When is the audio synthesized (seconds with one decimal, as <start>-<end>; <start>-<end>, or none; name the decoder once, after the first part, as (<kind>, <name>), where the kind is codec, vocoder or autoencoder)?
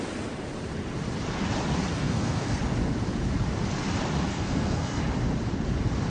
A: 1.9-2.6 (codec, SNAC); 4.3-5.0